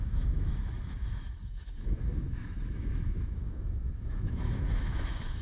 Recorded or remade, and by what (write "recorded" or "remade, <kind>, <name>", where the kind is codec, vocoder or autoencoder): remade, autoencoder, DAC-VAE